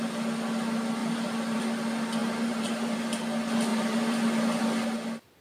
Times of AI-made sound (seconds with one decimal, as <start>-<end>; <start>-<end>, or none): 1.0-1.6; 2.2-3.0; 3.7-4.6